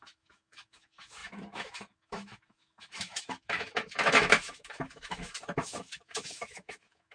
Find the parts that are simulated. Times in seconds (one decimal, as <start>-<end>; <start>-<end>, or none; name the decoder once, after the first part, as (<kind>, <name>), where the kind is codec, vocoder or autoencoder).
0.0-7.1 (autoencoder, DAC-VAE)